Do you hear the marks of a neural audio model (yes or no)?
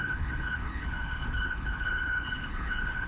yes